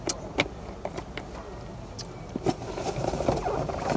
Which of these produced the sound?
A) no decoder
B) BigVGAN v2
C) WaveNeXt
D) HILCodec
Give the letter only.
A